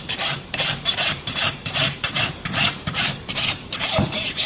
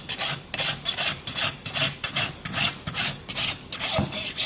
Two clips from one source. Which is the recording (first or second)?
second